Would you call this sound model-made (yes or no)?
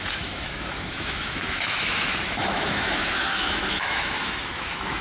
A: yes